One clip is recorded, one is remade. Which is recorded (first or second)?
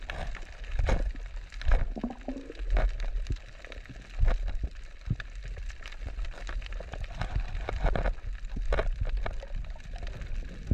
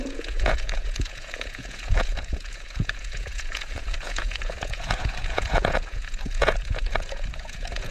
first